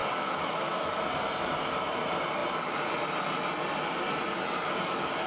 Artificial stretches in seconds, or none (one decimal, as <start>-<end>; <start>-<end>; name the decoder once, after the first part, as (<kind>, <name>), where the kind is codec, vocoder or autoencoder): 0.0-0.9 (autoencoder, DAC-VAE)